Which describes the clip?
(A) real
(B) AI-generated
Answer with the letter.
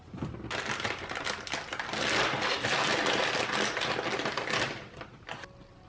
A